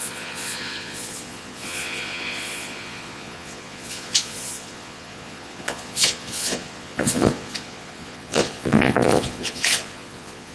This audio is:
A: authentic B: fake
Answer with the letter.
B